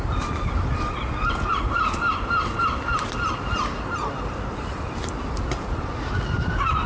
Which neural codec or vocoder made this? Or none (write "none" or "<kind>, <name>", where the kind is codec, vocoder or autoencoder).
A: vocoder, BigVGAN v2